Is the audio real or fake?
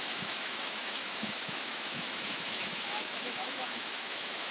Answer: fake